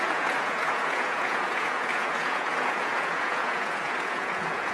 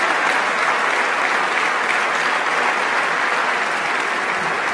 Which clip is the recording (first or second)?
second